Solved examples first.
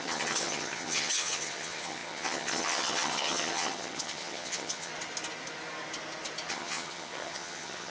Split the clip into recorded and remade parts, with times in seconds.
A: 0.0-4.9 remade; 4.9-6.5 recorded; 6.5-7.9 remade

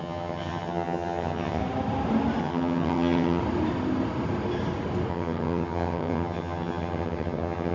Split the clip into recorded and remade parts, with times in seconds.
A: 0.0-1.6 remade; 1.6-2.4 recorded; 2.4-3.4 remade; 3.4-5.1 recorded; 5.1-7.7 remade

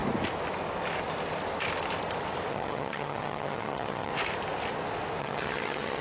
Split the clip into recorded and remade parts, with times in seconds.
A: 0.0-2.5 recorded; 2.5-4.1 remade; 4.1-5.2 recorded; 5.2-6.0 remade

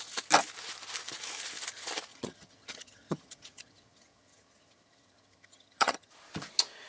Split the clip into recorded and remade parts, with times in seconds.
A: 0.0-2.1 recorded; 2.1-6.1 remade; 6.1-6.9 recorded

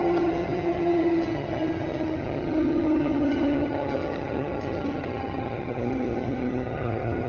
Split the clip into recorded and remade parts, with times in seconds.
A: 0.0-7.3 remade

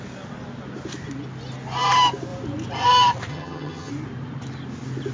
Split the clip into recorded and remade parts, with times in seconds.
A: 0.0-3.3 recorded; 3.3-3.9 remade; 3.9-5.1 recorded

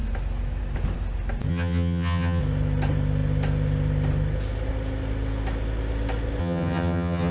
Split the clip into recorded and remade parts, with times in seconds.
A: 0.0-1.5 recorded; 1.5-2.4 remade; 2.4-6.4 recorded; 6.4-7.3 remade

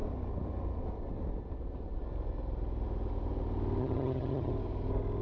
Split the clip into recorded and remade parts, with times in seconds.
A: 0.0-3.8 recorded; 3.8-4.5 remade; 4.5-5.2 recorded